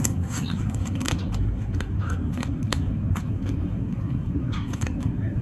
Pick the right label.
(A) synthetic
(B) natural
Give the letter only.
A